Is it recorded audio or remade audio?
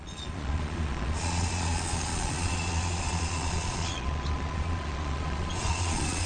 remade